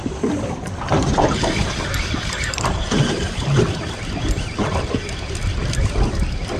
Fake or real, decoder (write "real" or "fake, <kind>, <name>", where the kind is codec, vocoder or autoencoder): real